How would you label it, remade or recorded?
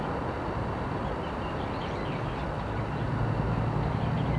recorded